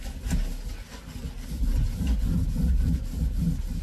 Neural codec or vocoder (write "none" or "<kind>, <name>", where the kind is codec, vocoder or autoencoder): none